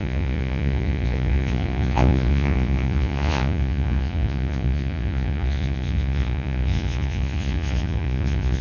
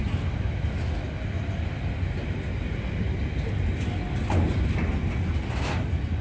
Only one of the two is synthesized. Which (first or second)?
first